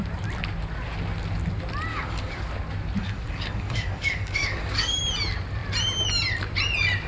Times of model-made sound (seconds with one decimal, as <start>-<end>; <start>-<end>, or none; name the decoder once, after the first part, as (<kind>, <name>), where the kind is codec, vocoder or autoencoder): 1.9-2.5 (codec, DAC); 3.0-5.0